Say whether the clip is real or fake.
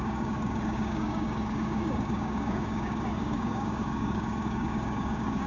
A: fake